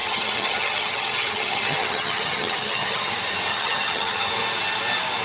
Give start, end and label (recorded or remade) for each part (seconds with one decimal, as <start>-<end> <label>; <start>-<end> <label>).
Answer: 0.0-3.1 remade; 3.1-3.5 recorded; 3.5-4.3 remade; 4.3-5.2 recorded